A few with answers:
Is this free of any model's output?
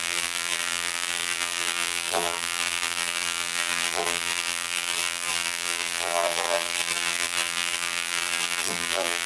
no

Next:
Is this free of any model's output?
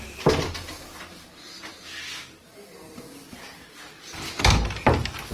yes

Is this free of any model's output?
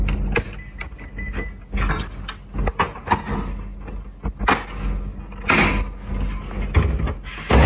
yes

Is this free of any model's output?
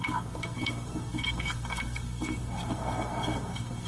no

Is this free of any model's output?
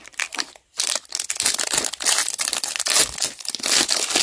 yes